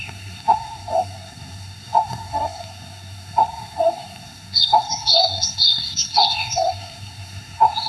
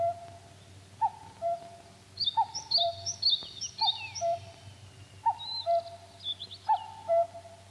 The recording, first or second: second